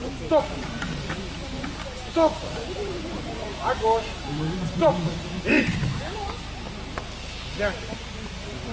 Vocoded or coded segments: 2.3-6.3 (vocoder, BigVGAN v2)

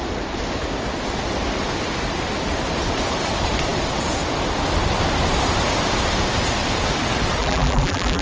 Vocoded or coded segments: 7.4-8.2 (vocoder, BigVGAN v2)

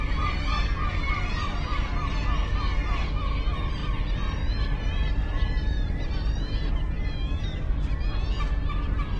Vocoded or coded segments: 3.8-6.7 (vocoder, BigVGAN v2)

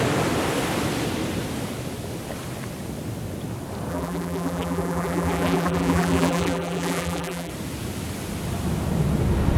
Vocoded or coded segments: 3.9-7.5 (vocoder, BigVGAN v2)